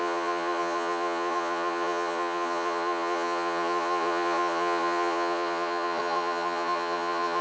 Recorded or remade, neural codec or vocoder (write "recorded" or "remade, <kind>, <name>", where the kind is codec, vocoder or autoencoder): remade, vocoder, Vocos